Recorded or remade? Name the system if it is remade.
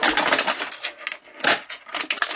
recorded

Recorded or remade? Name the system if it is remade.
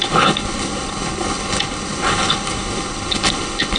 remade, codec, HILCodec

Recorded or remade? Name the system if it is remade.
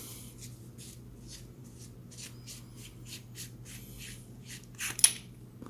recorded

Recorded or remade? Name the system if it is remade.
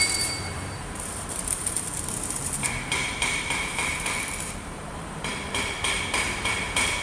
remade, vocoder, BigVGAN v2